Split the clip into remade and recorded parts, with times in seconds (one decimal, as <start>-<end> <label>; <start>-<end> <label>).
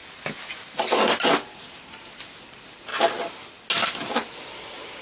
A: 0.0-5.0 recorded